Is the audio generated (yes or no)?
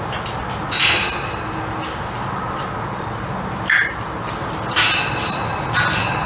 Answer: no